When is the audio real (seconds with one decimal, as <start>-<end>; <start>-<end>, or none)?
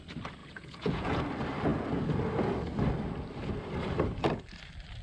0.0-0.4; 1.2-5.0